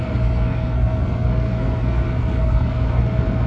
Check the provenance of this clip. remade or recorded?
remade